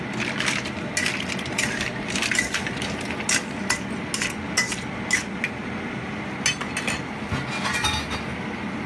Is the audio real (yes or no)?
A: yes